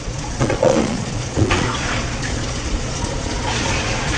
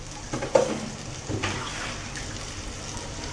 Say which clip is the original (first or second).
second